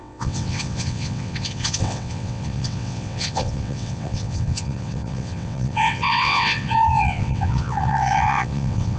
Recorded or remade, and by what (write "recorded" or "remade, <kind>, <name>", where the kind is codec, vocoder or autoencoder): remade, vocoder, WaveNeXt